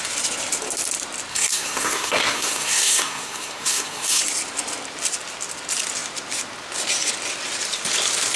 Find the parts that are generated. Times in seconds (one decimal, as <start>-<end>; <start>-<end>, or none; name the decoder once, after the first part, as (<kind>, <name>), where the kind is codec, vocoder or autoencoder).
1.3-4.2 (codec, SNAC)

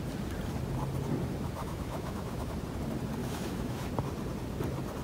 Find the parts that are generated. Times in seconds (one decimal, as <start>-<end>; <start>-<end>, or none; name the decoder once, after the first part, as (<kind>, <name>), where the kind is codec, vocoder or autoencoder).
1.6-2.5 (autoencoder, DAC-VAE); 3.2-3.9

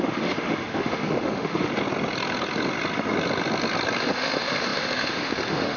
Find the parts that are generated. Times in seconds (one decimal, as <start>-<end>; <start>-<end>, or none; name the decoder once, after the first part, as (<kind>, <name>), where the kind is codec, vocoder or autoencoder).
0.0-1.7 (autoencoder, DAC-VAE); 4.0-5.8

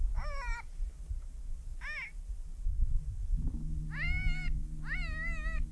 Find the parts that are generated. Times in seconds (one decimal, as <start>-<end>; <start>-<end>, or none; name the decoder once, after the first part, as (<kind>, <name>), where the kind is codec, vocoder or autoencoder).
none

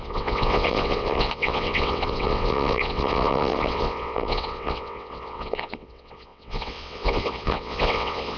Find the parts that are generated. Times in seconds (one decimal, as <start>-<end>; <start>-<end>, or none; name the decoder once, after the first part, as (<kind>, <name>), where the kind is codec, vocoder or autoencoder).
0.0-8.4 (vocoder, WaveNeXt)

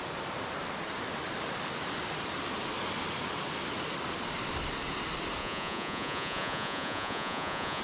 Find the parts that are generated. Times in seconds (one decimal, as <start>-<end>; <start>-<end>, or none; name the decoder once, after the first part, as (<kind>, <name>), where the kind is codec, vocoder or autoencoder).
5.4-7.8 (vocoder, Vocos)

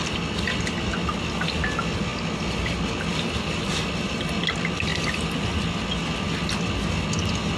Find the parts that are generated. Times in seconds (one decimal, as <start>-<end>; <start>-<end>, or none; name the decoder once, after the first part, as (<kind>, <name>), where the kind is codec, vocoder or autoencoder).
none